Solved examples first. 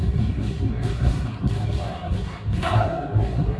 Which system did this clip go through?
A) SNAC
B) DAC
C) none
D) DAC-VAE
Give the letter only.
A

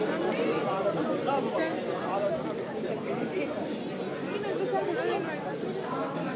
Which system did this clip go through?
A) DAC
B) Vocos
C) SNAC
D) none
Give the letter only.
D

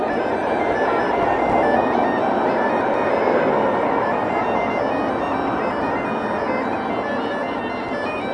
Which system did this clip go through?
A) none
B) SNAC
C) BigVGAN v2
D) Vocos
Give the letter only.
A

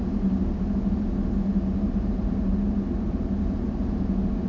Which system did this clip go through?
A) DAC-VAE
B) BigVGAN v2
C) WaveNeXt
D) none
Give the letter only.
D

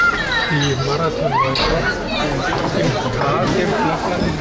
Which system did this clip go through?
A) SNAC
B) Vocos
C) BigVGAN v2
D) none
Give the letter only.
D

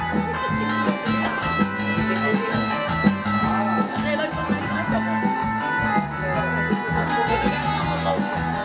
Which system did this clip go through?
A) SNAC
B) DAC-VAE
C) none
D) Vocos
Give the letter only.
C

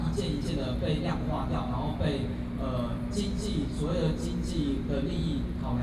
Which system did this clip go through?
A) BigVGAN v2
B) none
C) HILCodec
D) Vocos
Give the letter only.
B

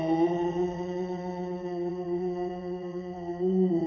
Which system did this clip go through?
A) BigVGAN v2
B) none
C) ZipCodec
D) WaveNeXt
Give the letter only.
D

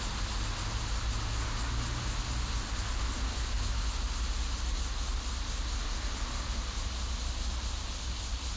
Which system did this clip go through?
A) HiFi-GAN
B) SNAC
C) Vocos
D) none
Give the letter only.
D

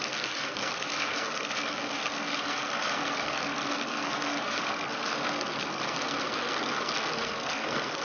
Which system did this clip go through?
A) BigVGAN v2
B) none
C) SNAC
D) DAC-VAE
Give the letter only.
C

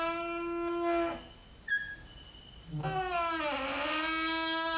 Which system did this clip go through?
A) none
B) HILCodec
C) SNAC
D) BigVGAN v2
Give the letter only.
A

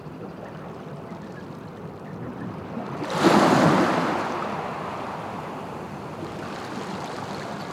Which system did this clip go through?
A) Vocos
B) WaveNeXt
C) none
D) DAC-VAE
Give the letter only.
C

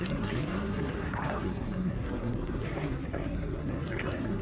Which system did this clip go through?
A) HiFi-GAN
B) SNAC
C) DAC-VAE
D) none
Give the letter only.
B